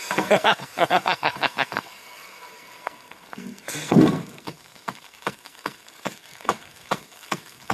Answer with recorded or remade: remade